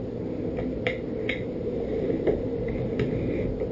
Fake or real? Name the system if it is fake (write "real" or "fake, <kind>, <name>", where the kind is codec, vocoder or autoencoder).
real